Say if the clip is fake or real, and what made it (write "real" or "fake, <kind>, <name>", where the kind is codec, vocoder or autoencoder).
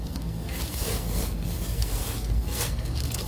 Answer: fake, codec, SNAC